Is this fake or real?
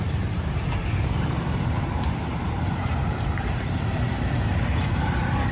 fake